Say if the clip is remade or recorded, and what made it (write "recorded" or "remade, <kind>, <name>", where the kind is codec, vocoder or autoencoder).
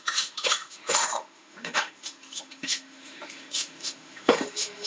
remade, autoencoder, DAC-VAE